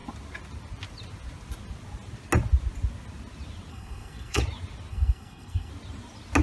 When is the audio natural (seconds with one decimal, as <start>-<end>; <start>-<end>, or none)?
0.0-3.7; 4.4-4.9; 5.7-6.4